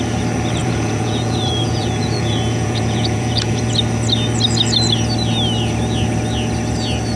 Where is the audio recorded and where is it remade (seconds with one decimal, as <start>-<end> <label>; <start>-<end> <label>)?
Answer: 0.0-0.6 recorded; 0.6-3.7 remade; 3.7-7.2 recorded